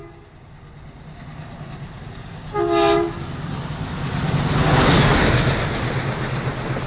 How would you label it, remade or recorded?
recorded